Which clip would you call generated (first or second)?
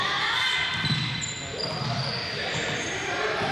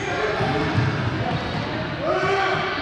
first